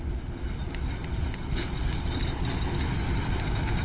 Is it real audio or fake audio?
real